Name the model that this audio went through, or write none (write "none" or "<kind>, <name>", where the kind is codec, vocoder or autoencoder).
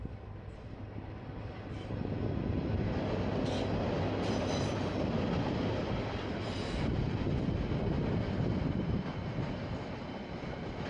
none